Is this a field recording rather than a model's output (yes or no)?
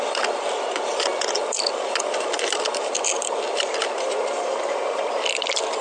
yes